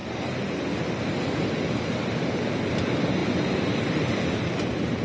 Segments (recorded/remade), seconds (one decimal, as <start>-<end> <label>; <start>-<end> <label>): 0.0-2.7 remade; 2.7-3.2 recorded; 3.2-5.0 remade